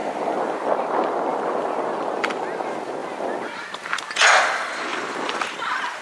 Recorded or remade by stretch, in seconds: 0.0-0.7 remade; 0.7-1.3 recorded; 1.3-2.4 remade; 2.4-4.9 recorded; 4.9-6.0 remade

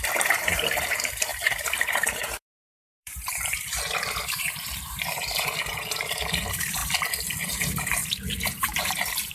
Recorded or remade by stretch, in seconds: 0.0-6.8 remade; 6.8-7.4 recorded; 7.4-8.0 remade; 8.0-8.6 recorded; 8.6-9.3 remade